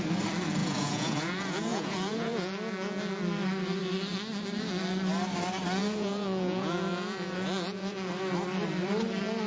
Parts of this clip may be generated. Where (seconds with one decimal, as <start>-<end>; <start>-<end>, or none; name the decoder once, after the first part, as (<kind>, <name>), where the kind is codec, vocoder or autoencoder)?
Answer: 0.6-3.0 (vocoder, Vocos); 5.8-8.1